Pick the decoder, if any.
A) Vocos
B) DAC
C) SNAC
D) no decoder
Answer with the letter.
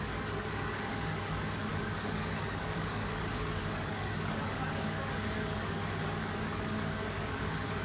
B